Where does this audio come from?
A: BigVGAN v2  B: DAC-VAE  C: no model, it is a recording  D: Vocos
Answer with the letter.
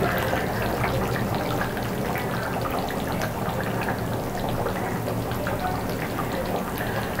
C